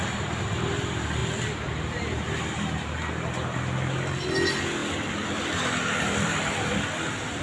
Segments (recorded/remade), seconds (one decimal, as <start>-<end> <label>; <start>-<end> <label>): 0.0-1.2 recorded; 1.2-3.1 remade; 3.1-4.8 recorded; 4.8-6.0 remade; 6.0-7.4 recorded